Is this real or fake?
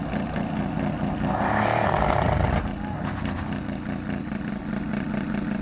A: real